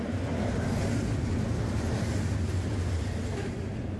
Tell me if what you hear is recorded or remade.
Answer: recorded